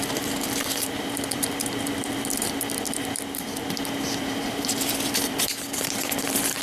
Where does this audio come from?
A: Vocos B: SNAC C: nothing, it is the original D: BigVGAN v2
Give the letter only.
D